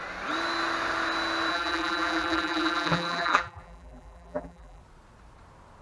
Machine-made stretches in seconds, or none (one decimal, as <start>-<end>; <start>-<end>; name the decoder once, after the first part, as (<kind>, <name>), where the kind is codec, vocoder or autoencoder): 1.5-4.8 (vocoder, BigVGAN v2)